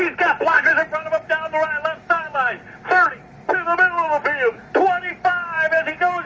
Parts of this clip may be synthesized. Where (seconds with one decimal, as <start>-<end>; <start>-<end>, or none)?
0.0-3.5; 5.1-6.3